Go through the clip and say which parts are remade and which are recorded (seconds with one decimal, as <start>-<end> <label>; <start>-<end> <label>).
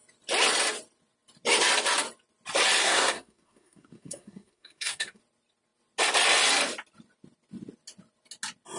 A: 0.0-2.8 recorded; 2.8-5.2 remade; 5.2-8.8 recorded